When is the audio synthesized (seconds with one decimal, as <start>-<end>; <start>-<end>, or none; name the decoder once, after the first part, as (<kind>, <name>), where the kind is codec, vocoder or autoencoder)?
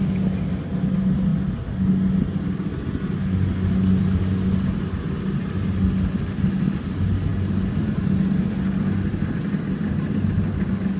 none